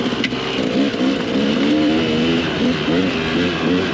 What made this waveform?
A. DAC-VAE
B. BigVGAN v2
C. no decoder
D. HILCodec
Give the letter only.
C